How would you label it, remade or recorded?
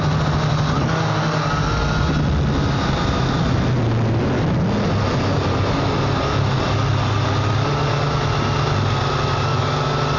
recorded